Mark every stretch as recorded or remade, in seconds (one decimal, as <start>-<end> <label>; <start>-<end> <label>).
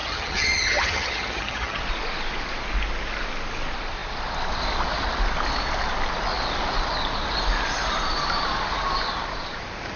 0.0-1.8 remade; 1.8-10.0 recorded